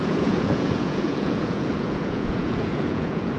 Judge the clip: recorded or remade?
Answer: remade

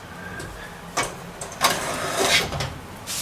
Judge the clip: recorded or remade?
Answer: remade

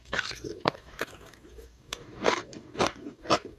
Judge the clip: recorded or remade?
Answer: remade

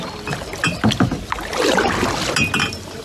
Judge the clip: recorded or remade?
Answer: recorded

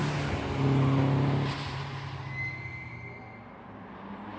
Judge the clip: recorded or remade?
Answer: recorded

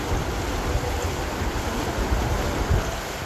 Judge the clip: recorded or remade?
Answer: recorded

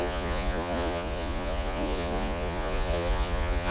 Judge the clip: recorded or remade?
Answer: remade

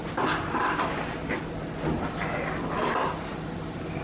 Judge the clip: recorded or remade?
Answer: recorded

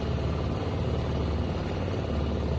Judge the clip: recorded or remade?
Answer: recorded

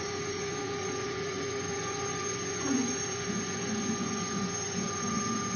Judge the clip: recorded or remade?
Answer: remade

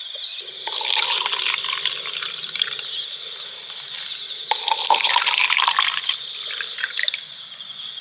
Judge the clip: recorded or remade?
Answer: recorded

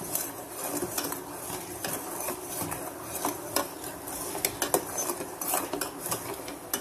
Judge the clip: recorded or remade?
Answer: recorded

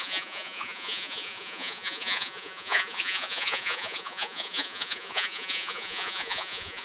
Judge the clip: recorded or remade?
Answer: remade